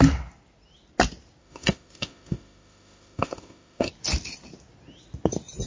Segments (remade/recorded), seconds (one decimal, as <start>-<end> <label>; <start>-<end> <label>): 0.0-1.4 recorded; 1.4-3.9 remade; 3.9-5.7 recorded